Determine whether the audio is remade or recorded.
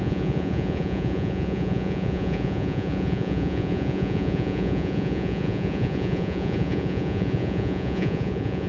remade